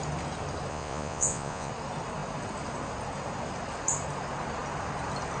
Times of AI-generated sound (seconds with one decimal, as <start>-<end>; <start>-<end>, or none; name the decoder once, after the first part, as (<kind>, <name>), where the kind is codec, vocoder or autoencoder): 0.7-1.7 (vocoder, Vocos)